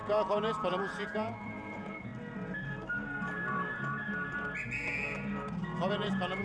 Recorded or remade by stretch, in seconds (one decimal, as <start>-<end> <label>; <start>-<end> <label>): 0.0-2.1 remade; 2.1-5.9 recorded; 5.9-6.4 remade